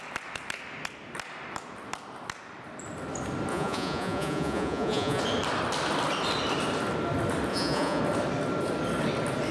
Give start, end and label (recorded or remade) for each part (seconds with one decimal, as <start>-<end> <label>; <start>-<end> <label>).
0.0-3.5 recorded; 3.5-5.2 remade; 5.2-7.5 recorded; 7.5-8.0 remade; 8.0-9.5 recorded